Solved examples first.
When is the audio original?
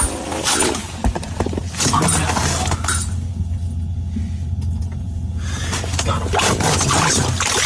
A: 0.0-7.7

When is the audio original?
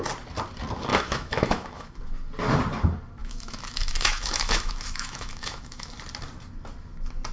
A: 0.0-0.9; 2.0-3.2; 5.9-7.3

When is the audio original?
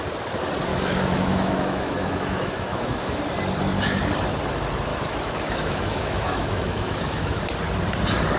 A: 0.0-0.7; 3.2-4.9; 7.4-8.4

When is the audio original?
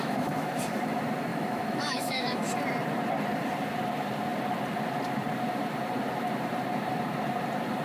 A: 0.6-1.3; 2.5-7.8